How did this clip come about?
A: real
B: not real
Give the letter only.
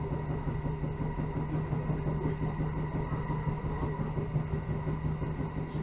A